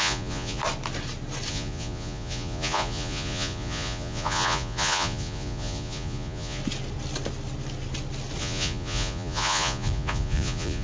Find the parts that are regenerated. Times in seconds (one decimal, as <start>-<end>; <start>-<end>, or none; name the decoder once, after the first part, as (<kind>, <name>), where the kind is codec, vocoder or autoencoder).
0.0-0.6 (vocoder, Vocos); 1.5-6.6; 8.4-10.8